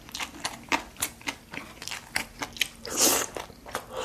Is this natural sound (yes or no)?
yes